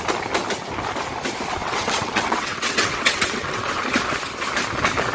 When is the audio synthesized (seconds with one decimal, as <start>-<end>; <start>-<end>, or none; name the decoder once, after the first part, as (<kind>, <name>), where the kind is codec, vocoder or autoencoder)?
1.6-3.8 (vocoder, WaveNeXt)